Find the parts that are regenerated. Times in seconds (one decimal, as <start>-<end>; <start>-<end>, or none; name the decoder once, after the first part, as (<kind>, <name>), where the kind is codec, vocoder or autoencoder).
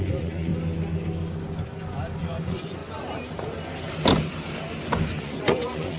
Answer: 0.0-0.5 (vocoder, Vocos); 2.2-2.8; 5.2-6.0